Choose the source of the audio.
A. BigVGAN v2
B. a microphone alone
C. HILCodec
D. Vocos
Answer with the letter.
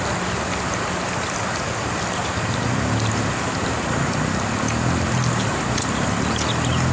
B